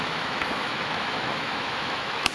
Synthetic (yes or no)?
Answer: yes